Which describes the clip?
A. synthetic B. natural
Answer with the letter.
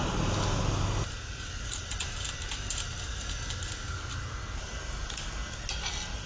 B